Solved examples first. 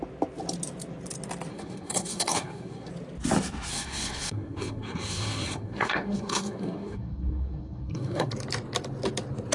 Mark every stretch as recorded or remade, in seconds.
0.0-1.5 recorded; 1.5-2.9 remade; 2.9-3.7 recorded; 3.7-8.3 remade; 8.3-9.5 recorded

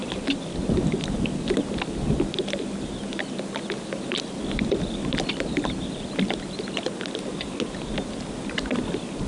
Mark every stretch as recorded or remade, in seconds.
0.0-9.3 recorded

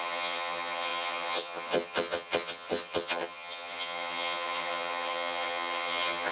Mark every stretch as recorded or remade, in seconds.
0.0-6.3 remade

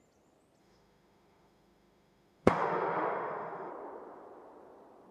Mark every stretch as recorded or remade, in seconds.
0.0-0.6 recorded; 0.6-3.7 remade; 3.7-5.1 recorded

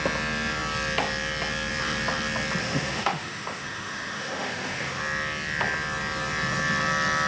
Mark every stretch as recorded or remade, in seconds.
0.0-2.6 recorded; 2.6-5.0 remade; 5.0-7.3 recorded

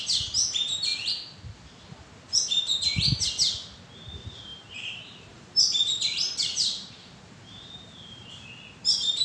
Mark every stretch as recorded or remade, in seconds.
0.0-4.5 recorded; 4.5-8.3 remade; 8.3-9.2 recorded

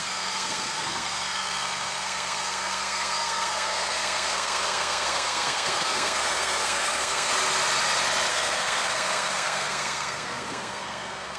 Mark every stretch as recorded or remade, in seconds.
0.0-7.3 remade; 7.3-8.3 recorded; 8.3-11.4 remade

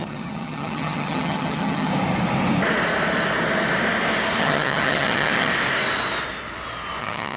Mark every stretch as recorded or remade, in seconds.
0.0-1.9 remade; 1.9-4.4 recorded; 4.4-5.5 remade; 5.5-7.0 recorded; 7.0-7.4 remade